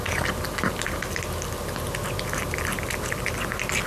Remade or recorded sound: recorded